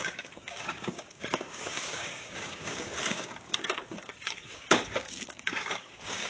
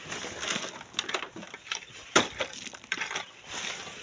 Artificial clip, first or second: first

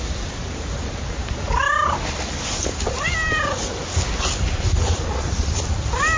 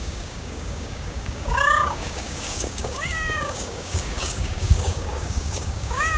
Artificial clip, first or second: second